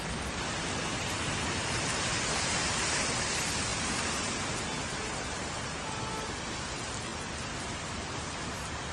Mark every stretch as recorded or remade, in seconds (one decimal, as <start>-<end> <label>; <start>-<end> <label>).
0.0-8.9 recorded